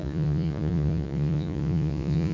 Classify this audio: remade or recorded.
remade